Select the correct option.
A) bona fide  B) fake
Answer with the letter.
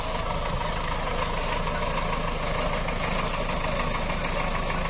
A